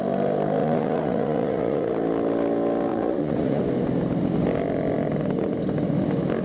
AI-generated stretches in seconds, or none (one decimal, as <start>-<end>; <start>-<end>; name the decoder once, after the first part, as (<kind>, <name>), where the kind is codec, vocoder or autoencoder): 0.6-1.9 (vocoder, Vocos); 2.9-3.6